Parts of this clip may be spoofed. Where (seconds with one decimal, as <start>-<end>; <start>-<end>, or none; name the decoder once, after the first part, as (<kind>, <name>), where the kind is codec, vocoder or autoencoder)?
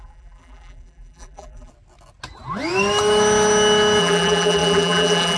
0.0-1.7 (vocoder, BigVGAN v2); 4.0-5.4